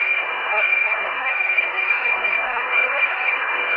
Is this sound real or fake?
fake